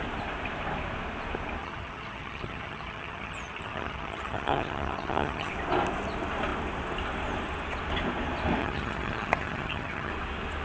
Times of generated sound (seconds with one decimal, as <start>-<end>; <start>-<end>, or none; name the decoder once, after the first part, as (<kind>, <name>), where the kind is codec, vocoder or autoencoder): 1.6-5.5 (vocoder, HiFi-GAN); 8.6-10.1